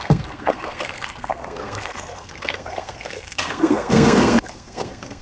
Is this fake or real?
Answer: fake